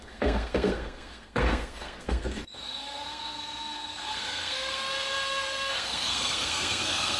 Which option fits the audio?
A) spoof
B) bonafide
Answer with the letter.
A